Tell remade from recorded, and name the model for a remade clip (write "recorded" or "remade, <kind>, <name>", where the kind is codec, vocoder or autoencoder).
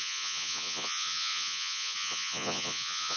remade, vocoder, Vocos